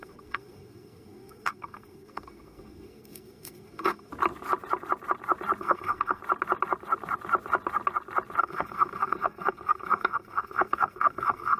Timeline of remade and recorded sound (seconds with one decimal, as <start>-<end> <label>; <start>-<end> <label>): 0.0-4.1 remade; 4.1-5.6 recorded; 5.6-6.2 remade; 6.2-8.4 recorded; 8.4-11.6 remade

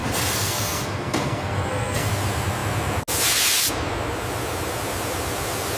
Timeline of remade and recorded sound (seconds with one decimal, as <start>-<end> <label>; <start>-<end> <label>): 0.0-2.1 remade; 2.1-5.8 recorded